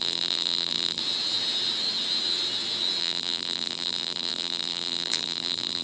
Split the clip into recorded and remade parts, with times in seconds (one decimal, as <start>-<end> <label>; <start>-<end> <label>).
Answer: 0.0-1.0 remade; 1.0-3.0 recorded; 3.0-5.8 remade

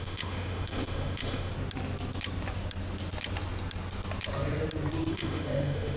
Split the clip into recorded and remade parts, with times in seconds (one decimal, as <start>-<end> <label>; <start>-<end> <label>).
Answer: 0.0-1.5 remade; 1.5-5.1 recorded; 5.1-6.0 remade

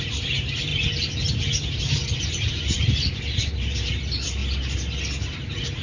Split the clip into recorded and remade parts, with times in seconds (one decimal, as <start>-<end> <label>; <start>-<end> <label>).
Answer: 0.0-0.7 remade; 0.7-1.8 recorded; 1.8-4.4 remade; 4.4-5.8 recorded

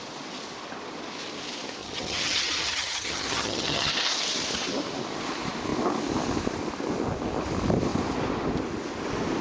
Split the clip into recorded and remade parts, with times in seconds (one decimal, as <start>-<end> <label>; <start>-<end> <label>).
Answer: 0.0-1.8 recorded; 1.8-3.9 remade; 3.9-9.4 recorded

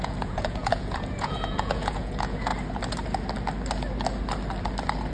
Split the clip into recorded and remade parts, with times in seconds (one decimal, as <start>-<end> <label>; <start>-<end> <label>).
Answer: 0.0-2.5 remade; 2.5-5.1 recorded

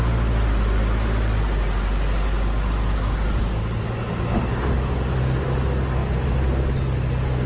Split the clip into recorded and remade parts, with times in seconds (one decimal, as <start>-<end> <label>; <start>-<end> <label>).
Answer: 0.0-7.5 recorded

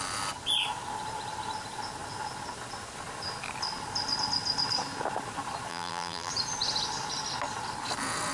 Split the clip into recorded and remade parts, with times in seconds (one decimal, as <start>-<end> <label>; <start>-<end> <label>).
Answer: 0.0-5.7 recorded; 5.7-6.3 remade; 6.3-8.3 recorded

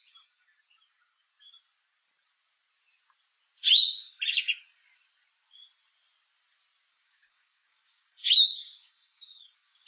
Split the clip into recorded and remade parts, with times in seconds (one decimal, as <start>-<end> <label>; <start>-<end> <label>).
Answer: 0.0-6.9 recorded; 6.9-9.9 remade